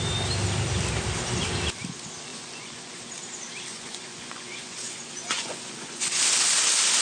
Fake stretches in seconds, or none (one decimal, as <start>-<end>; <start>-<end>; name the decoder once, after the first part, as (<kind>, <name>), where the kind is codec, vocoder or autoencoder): 2.3-3.0 (vocoder, Vocos); 3.7-6.2